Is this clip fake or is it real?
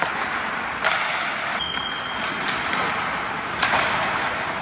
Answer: real